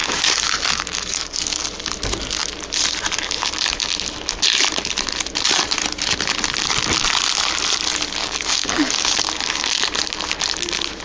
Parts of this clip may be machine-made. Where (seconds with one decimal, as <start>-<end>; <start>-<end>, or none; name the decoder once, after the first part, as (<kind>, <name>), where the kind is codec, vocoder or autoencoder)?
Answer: 0.0-1.6 (codec, DAC); 8.2-9.2